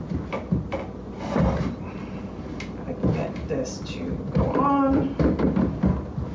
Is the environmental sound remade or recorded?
recorded